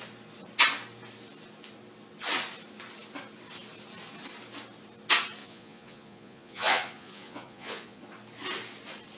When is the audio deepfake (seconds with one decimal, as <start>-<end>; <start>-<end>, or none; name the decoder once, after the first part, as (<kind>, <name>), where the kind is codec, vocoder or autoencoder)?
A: 5.4-8.0 (vocoder, Vocos)